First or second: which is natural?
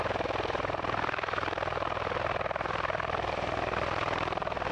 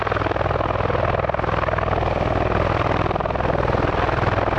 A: second